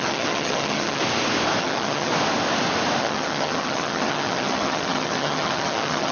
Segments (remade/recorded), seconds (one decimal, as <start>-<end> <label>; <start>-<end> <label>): 0.0-1.0 remade; 1.0-1.6 recorded; 1.6-2.1 remade; 2.1-3.0 recorded; 3.0-6.1 remade

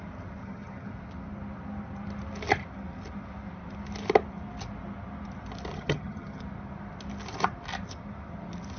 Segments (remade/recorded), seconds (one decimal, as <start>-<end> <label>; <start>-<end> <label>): 0.0-0.4 recorded; 0.4-0.9 remade; 0.9-5.7 recorded; 5.7-6.4 remade; 6.4-8.8 recorded

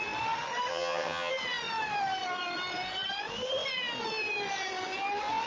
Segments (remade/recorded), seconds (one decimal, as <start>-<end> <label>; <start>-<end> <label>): 0.0-0.7 recorded; 0.7-1.3 remade; 1.3-5.5 recorded

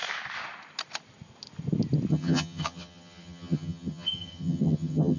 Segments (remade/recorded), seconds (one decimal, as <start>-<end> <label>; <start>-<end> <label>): 0.0-2.1 recorded; 2.1-5.2 remade

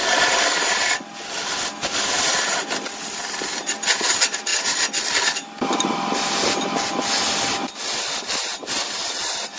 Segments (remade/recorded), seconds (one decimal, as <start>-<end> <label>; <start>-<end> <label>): 0.0-9.6 recorded